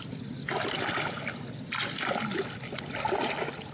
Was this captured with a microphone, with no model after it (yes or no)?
yes